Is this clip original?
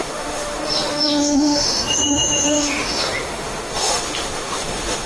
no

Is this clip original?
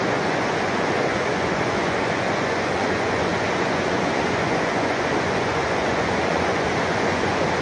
no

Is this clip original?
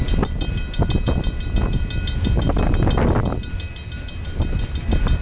yes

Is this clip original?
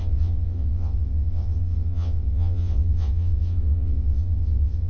no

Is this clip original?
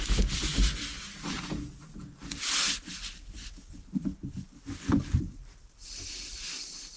yes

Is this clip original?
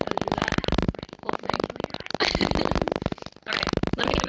yes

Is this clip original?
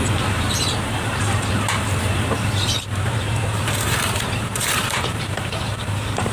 no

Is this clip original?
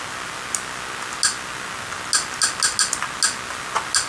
yes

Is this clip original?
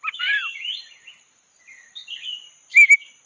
yes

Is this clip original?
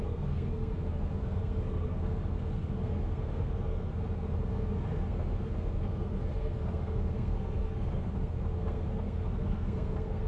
no